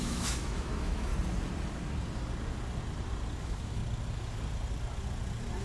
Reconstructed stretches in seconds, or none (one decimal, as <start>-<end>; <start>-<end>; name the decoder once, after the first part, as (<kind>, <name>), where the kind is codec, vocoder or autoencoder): 0.0-1.1 (autoencoder, DAC-VAE); 3.4-3.8